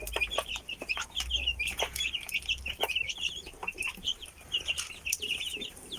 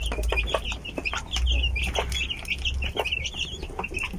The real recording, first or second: second